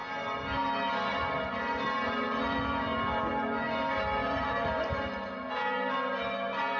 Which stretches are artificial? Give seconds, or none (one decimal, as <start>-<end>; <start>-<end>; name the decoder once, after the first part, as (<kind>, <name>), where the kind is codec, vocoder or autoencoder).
none

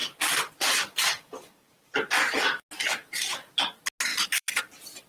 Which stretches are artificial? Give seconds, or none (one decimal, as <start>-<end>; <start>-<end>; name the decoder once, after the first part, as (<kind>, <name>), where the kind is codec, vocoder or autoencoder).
0.0-1.5 (vocoder, BigVGAN v2); 4.1-4.6

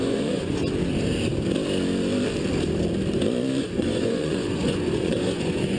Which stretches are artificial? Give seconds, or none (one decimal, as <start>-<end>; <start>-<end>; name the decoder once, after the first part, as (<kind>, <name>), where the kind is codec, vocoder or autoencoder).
0.0-0.6 (vocoder, Vocos); 3.6-5.8

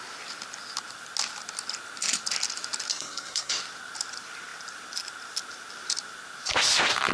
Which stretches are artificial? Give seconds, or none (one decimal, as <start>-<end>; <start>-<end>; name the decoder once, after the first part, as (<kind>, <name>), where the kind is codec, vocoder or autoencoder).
2.9-3.6 (codec, SNAC)

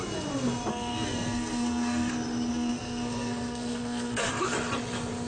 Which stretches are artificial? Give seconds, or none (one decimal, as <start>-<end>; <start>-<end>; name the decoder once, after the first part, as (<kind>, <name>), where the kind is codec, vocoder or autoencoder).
0.7-2.1 (codec, SNAC); 2.5-4.3

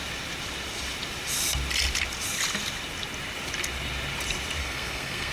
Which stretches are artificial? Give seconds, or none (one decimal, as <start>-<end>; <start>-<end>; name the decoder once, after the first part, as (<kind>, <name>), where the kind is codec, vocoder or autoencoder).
4.6-5.3 (codec, SNAC)

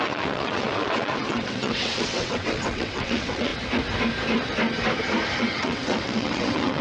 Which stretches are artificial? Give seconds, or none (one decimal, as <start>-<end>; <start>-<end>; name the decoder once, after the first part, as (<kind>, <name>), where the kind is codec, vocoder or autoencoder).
0.0-3.5 (vocoder, WaveNeXt); 5.4-6.8